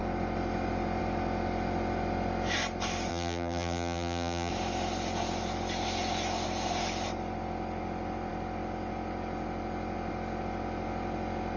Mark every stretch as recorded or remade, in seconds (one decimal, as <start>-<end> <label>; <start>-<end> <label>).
0.0-3.1 recorded; 3.1-4.5 remade; 4.5-11.6 recorded